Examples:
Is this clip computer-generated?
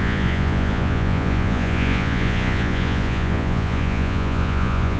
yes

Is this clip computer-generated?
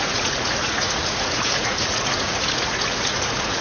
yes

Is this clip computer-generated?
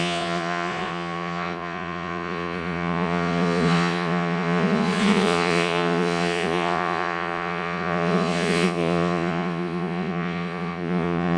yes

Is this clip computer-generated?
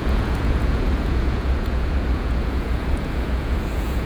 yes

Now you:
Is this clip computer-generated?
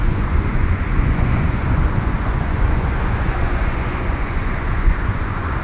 yes